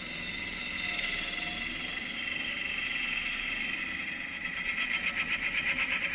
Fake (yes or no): no